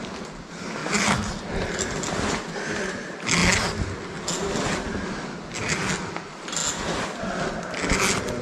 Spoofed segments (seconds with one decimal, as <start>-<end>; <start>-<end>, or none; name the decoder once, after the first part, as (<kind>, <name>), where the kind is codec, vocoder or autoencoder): none